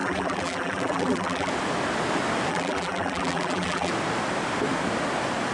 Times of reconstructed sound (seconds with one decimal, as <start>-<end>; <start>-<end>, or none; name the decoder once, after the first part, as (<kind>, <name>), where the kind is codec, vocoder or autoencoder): 0.0-1.5 (vocoder, BigVGAN v2); 2.5-3.9